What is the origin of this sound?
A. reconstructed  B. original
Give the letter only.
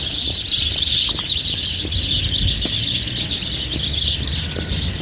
B